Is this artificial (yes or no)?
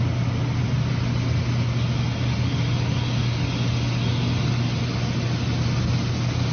no